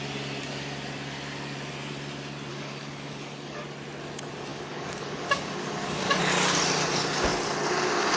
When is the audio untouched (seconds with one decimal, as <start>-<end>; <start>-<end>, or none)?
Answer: 0.0-2.5; 3.6-4.5; 6.2-8.2